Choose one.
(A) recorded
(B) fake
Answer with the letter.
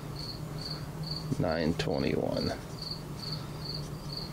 A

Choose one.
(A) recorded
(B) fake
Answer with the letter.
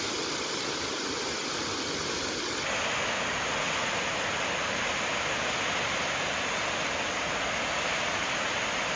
A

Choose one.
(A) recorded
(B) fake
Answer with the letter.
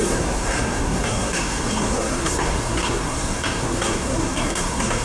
B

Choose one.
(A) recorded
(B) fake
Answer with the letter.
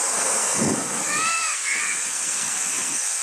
B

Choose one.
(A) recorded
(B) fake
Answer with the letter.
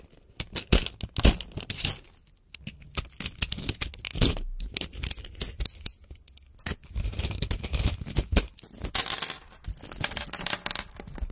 A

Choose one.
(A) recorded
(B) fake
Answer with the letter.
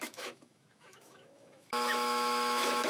B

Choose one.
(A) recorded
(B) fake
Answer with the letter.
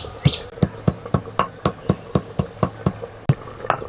A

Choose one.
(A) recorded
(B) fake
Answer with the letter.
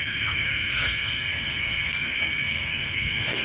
B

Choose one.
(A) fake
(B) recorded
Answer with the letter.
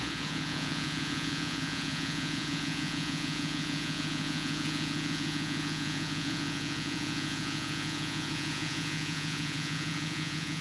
A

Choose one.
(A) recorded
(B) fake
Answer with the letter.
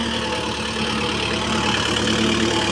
A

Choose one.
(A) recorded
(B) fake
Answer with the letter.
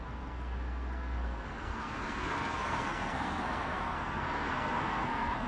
B